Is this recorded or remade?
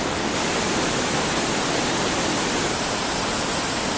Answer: recorded